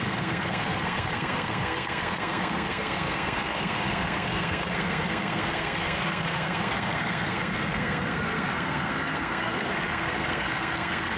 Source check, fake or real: fake